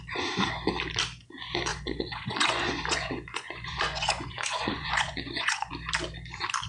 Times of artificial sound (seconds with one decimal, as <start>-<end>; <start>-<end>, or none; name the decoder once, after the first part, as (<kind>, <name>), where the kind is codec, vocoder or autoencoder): 1.7-5.7 (vocoder, Vocos)